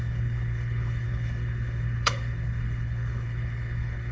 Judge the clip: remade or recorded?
remade